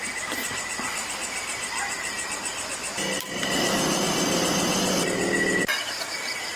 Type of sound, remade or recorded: recorded